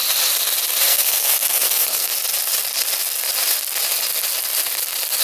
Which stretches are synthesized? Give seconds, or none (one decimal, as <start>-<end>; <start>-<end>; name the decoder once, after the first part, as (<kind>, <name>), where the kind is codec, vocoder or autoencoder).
0.8-2.1 (codec, SNAC)